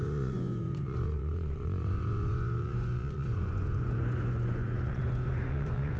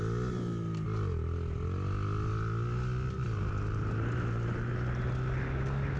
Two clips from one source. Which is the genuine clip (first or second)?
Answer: second